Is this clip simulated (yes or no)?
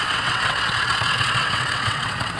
yes